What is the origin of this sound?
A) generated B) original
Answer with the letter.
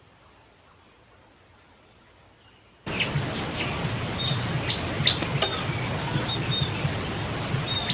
B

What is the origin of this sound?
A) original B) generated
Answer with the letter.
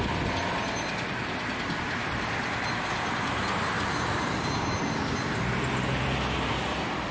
A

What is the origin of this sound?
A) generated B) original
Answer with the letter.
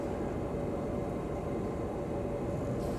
B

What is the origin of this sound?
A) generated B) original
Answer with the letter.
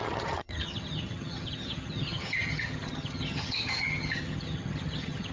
A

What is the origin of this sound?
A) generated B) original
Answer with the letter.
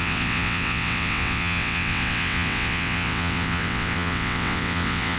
A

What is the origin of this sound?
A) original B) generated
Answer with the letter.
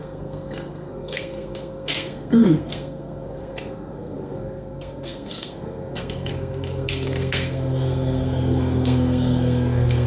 B